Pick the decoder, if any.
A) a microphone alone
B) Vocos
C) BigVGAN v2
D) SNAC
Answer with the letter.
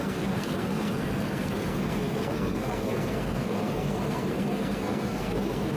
D